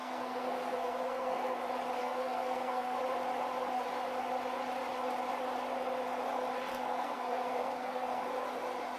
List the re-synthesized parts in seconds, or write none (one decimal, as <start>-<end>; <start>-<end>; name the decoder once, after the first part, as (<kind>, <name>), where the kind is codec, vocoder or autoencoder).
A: 0.0-1.6 (codec, SNAC); 2.0-3.0; 6.7-8.2